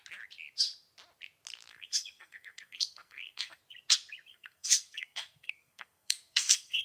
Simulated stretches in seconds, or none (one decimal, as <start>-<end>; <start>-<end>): 1.7-3.6; 4.3-6.8